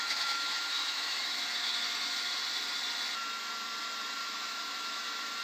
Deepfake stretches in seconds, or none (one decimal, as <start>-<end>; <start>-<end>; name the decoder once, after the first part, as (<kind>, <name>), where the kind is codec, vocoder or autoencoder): 0.0-1.4 (autoencoder, DAC-VAE); 4.2-5.4